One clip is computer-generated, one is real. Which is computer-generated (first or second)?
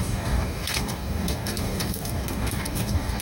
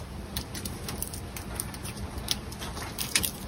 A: first